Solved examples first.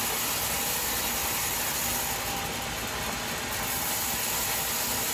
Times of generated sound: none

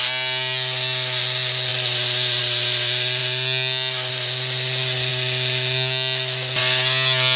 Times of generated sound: none